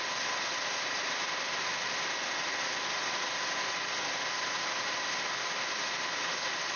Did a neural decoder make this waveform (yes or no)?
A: no